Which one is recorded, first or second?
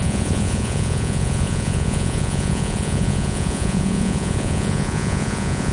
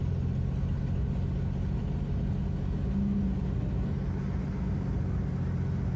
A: second